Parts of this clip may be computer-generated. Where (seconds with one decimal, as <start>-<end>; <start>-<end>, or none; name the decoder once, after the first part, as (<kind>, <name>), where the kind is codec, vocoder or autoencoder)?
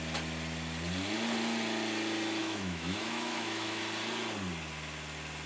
2.4-3.8 (autoencoder, DAC-VAE)